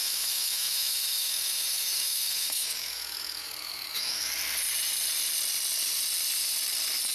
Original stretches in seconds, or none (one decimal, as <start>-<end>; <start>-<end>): 4.3-7.1